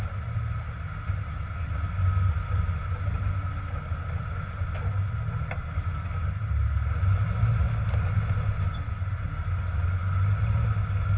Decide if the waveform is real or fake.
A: real